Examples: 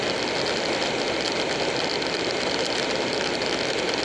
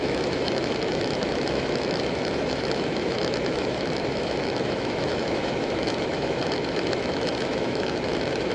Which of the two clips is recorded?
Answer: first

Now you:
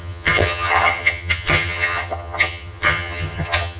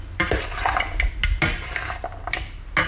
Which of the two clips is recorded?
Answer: second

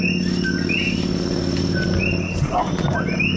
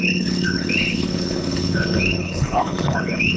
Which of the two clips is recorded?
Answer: first